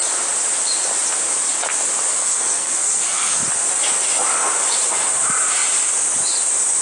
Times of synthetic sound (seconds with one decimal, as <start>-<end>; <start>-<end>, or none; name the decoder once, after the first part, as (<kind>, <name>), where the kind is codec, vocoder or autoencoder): 2.1-3.4 (codec, SNAC)